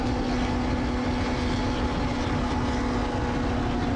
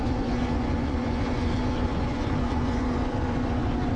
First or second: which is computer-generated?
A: second